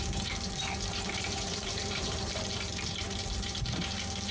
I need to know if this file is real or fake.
fake